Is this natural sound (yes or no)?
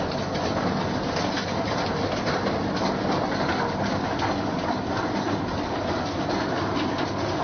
yes